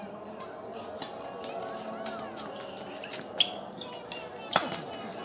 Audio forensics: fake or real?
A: real